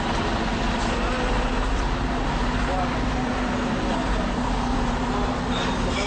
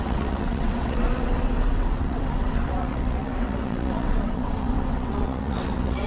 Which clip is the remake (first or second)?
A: second